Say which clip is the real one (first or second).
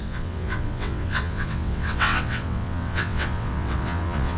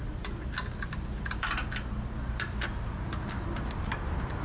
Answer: second